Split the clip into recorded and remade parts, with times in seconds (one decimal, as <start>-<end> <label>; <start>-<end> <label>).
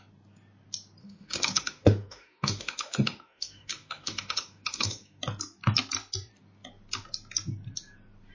0.0-1.0 recorded; 1.0-5.2 remade; 5.2-8.3 recorded